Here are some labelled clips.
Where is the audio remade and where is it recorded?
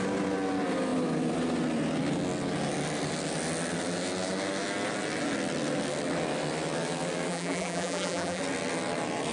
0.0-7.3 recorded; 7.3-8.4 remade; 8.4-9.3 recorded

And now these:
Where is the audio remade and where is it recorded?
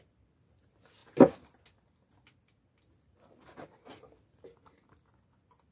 0.0-5.7 recorded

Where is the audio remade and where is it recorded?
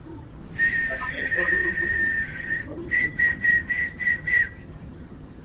0.0-0.4 remade; 0.4-1.1 recorded; 1.1-5.4 remade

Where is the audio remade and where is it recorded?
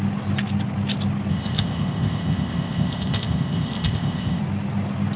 0.0-1.3 recorded; 1.3-4.4 remade; 4.4-5.2 recorded